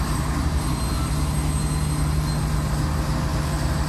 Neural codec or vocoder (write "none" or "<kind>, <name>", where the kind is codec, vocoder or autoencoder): none